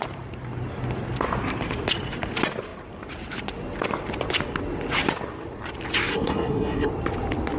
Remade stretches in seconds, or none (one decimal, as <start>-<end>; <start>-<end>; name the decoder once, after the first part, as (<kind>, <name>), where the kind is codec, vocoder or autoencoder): 6.1-6.9 (codec, SNAC)